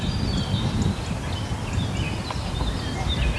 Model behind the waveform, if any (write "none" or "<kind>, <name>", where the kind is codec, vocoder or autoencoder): none